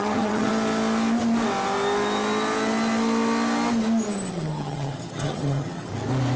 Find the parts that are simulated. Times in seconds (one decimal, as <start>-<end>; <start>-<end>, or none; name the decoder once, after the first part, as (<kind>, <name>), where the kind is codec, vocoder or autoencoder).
0.0-0.5 (vocoder, HiFi-GAN); 4.3-5.9